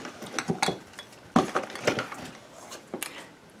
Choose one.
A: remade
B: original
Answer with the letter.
B